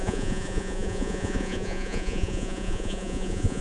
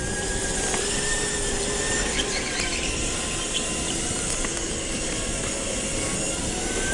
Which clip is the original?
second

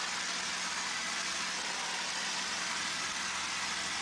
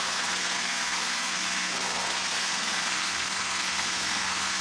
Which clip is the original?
first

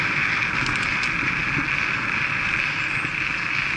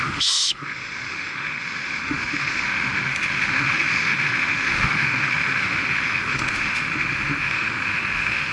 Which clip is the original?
first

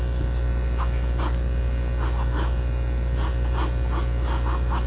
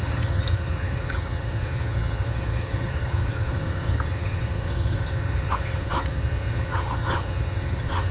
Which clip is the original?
first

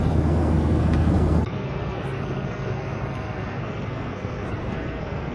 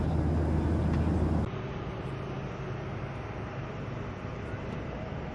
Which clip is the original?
second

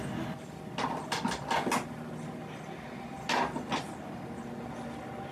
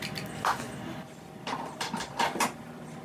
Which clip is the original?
first